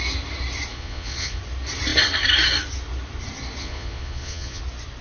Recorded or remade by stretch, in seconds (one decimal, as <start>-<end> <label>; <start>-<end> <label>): 0.0-0.7 recorded; 0.7-1.4 remade; 1.4-3.6 recorded; 3.6-4.6 remade; 4.6-5.0 recorded